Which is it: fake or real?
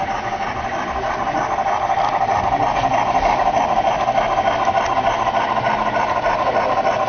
real